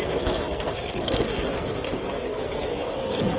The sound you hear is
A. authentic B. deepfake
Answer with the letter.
B